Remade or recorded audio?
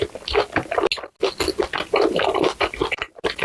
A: recorded